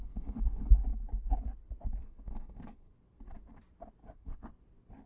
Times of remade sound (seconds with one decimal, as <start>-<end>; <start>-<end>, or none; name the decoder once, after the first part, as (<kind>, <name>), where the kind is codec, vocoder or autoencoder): 0.0-0.7 (codec, SNAC); 2.0-2.9; 4.0-4.5